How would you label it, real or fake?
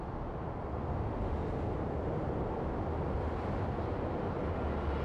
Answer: real